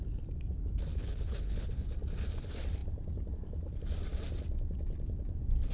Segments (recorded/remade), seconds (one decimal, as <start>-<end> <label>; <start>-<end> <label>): 0.0-0.9 recorded; 0.9-1.9 remade; 1.9-5.7 recorded